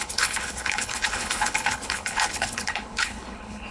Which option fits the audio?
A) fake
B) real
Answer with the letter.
A